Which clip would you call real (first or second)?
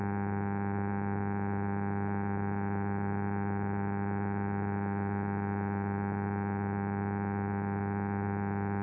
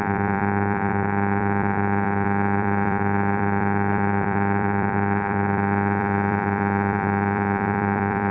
first